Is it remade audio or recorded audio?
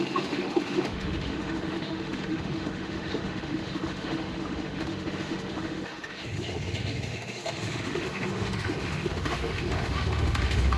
remade